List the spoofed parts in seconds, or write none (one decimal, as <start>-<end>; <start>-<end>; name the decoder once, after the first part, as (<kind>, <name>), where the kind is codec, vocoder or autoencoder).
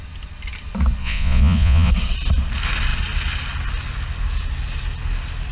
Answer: 1.0-1.9 (vocoder, Vocos)